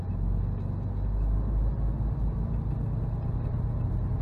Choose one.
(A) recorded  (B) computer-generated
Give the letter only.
A